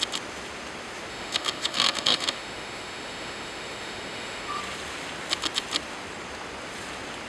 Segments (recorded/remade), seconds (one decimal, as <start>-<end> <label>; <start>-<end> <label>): 0.0-1.1 recorded; 1.1-4.6 remade; 4.6-7.3 recorded

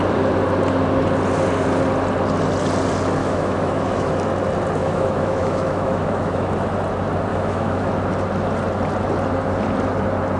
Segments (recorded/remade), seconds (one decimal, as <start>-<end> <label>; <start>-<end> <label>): 0.0-3.2 recorded; 3.2-4.1 remade; 4.1-4.8 recorded; 4.8-6.5 remade; 6.5-7.3 recorded; 7.3-7.9 remade; 7.9-10.4 recorded